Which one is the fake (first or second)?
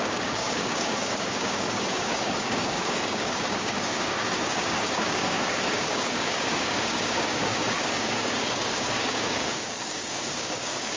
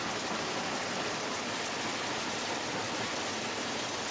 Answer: first